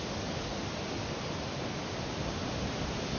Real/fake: real